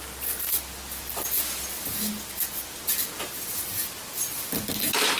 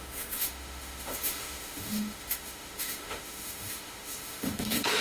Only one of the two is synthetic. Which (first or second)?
second